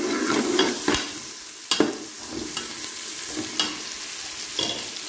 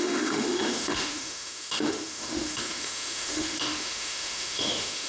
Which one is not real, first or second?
second